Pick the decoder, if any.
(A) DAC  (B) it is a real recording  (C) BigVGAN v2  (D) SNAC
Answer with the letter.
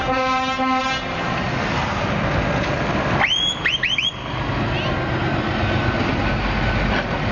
B